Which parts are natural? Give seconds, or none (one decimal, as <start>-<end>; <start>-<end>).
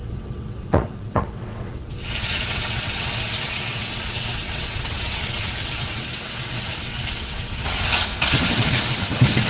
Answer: none